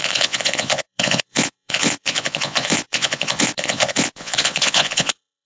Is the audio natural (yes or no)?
no